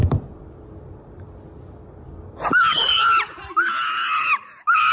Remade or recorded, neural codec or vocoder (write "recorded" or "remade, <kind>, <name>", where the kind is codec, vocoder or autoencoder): recorded